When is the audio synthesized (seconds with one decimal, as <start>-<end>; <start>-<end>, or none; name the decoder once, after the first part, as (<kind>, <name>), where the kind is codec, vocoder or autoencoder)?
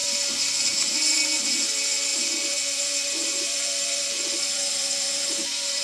0.0-5.8 (vocoder, BigVGAN v2)